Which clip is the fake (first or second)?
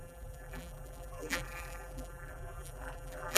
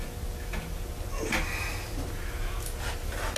first